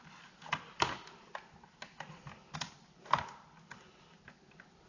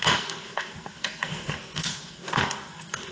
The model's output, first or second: second